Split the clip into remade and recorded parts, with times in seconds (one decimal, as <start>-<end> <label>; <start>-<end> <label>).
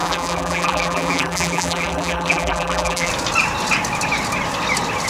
0.0-3.1 remade; 3.1-5.1 recorded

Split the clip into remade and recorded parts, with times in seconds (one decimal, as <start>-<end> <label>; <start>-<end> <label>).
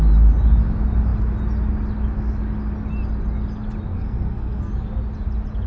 0.0-3.9 recorded; 3.9-4.7 remade; 4.7-5.7 recorded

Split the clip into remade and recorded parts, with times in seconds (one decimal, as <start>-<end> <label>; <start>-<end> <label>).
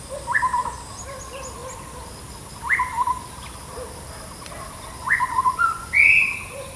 0.0-5.0 recorded; 5.0-6.1 remade; 6.1-6.8 recorded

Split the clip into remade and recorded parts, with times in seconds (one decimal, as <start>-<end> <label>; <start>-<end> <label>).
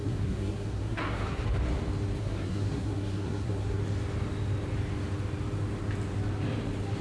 0.0-1.4 remade; 1.4-2.2 recorded; 2.2-3.8 remade; 3.8-7.0 recorded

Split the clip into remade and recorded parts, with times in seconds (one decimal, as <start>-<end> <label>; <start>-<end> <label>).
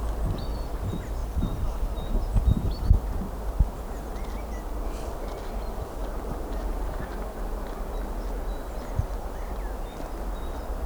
0.0-1.2 recorded; 1.2-2.8 remade; 2.8-6.0 recorded; 6.0-7.0 remade; 7.0-10.9 recorded